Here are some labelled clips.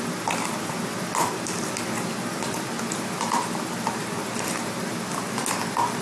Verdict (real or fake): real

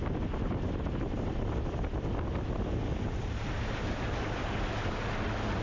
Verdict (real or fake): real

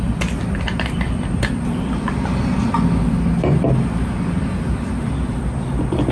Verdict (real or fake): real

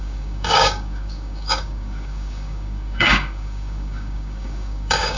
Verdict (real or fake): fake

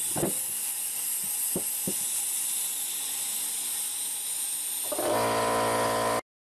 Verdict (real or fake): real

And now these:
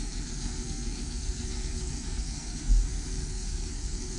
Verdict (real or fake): fake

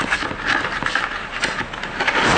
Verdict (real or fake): real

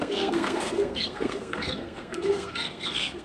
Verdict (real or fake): fake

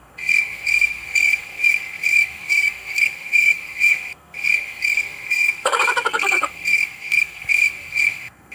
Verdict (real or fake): fake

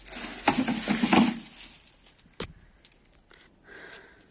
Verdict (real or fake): real